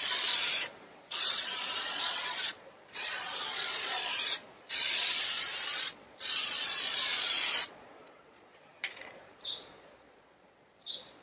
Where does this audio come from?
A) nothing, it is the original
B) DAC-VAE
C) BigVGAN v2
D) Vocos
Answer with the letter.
D